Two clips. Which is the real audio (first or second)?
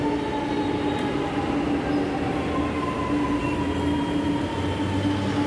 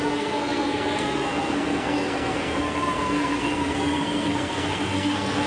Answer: first